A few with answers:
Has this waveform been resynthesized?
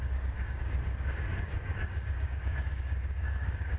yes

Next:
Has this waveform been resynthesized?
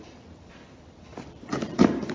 yes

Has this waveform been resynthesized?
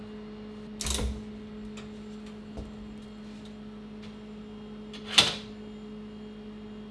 no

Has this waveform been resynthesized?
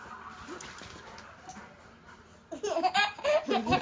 no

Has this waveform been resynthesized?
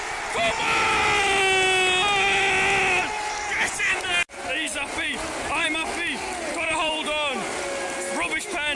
no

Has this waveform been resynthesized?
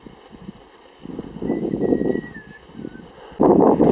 no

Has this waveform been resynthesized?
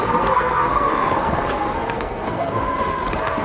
yes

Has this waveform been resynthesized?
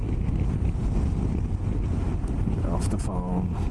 no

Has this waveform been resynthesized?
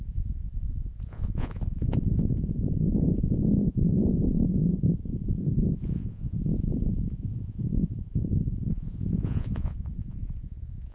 yes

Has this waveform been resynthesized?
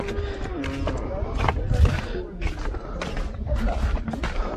no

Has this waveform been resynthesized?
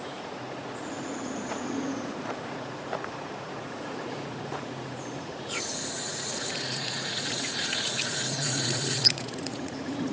yes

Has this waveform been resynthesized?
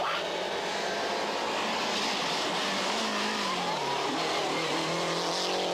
no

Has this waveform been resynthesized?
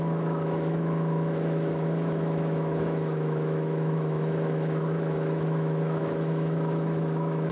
yes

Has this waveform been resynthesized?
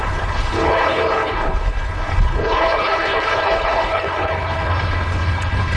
yes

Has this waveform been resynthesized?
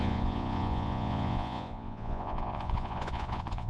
yes